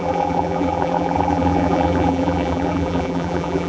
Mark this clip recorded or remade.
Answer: remade